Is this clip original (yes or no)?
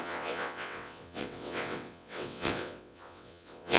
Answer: no